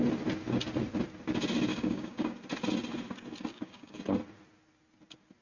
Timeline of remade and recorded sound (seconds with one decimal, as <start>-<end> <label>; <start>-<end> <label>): 0.0-1.7 recorded; 1.7-2.3 remade; 2.3-3.5 recorded; 3.5-4.0 remade; 4.0-5.4 recorded